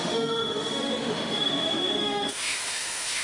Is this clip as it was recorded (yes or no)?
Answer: no